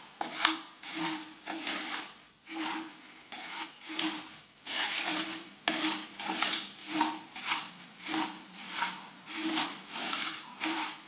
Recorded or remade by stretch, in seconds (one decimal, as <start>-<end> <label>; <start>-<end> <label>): 0.0-11.1 recorded